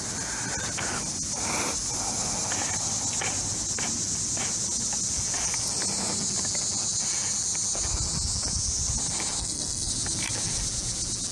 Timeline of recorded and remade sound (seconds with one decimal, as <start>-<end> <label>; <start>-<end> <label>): 0.0-9.4 recorded; 9.4-9.9 remade; 9.9-11.3 recorded